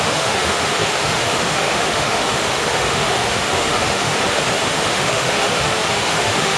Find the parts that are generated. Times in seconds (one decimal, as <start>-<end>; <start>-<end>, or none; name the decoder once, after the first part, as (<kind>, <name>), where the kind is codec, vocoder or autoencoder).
0.0-6.6 (autoencoder, DAC-VAE)